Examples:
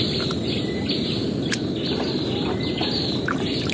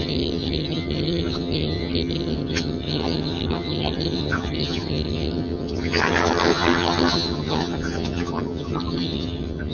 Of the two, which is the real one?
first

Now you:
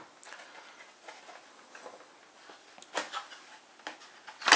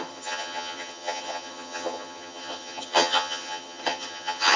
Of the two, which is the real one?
first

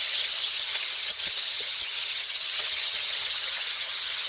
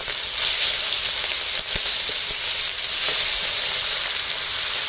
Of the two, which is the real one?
second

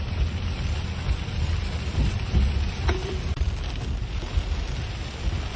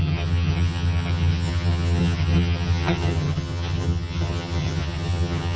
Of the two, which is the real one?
first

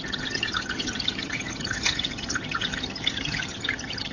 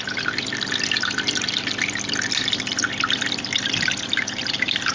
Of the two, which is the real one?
second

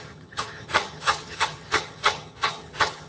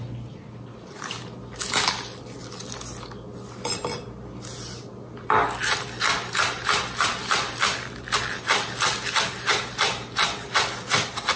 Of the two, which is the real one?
second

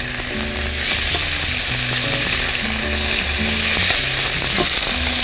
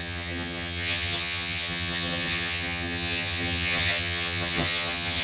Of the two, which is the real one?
first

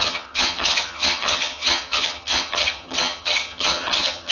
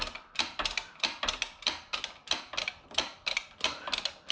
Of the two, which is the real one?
second